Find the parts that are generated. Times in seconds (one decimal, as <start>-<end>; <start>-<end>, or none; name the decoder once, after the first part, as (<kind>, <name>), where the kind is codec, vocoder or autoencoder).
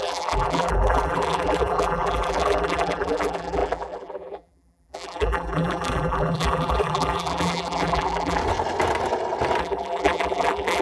0.0-8.4 (vocoder, BigVGAN v2); 9.6-10.8